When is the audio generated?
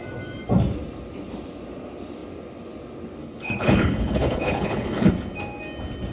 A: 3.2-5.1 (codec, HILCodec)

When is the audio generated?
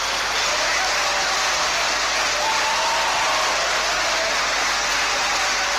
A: none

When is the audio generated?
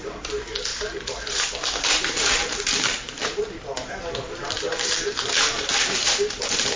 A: 0.0-6.8 (vocoder, BigVGAN v2)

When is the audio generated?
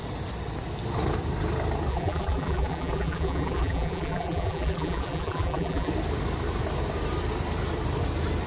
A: 1.9-5.9 (vocoder, BigVGAN v2)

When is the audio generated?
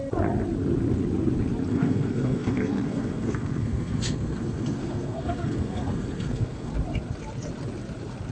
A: 1.7-6.7 (codec, SNAC)